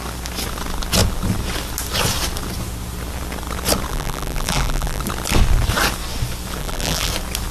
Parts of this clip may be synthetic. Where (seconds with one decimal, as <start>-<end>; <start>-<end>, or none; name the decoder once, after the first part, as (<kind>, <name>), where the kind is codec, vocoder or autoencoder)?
3.9-5.0 (vocoder, BigVGAN v2); 6.6-7.1